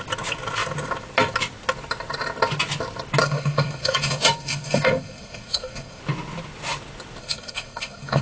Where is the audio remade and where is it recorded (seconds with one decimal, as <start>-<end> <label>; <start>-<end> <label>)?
0.0-3.2 recorded; 3.2-6.0 remade; 6.0-7.2 recorded; 7.2-8.2 remade